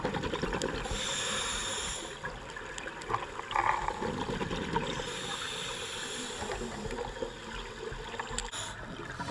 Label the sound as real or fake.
real